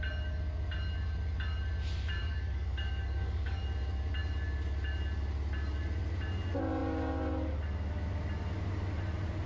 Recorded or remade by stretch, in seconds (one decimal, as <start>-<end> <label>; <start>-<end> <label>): 0.0-2.2 recorded; 2.2-3.6 remade; 3.6-9.5 recorded